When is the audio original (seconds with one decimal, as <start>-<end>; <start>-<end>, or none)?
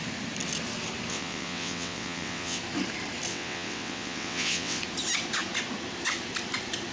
0.0-1.1; 2.6-3.3; 4.8-6.9